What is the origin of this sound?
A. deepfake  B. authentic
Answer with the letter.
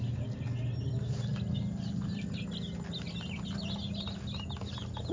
B